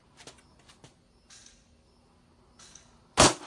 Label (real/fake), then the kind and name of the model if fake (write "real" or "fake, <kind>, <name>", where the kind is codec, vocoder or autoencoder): real